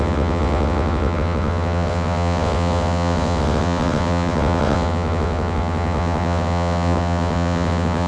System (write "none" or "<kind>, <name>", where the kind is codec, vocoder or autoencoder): vocoder, WaveNeXt